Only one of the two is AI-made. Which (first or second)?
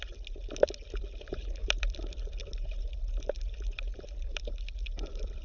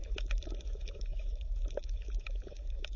second